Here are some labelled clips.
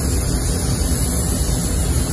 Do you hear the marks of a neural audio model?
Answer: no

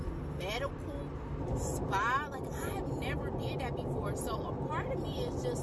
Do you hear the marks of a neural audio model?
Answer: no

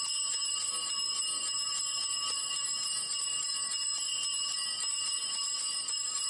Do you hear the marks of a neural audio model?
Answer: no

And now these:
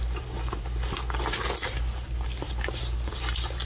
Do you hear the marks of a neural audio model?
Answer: no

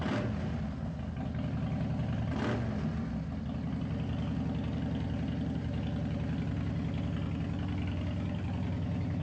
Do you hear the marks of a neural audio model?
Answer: no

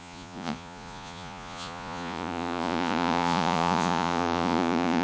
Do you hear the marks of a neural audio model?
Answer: yes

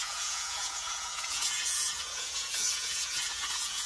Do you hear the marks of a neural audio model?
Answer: yes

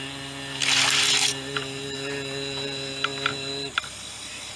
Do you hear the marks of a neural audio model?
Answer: no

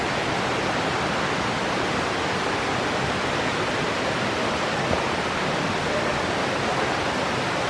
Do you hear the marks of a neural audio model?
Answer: no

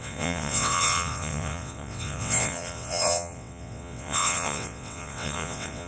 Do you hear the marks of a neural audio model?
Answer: yes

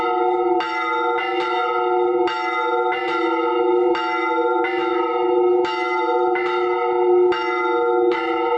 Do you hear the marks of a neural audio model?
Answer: no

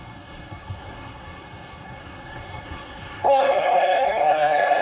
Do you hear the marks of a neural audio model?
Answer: yes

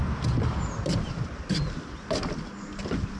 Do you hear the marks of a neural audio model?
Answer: no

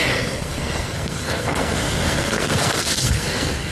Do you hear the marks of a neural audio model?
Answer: yes